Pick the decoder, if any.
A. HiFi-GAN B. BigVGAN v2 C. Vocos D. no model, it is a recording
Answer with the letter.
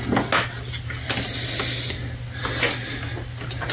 D